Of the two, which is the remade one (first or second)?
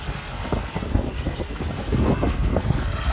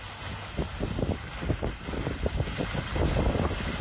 first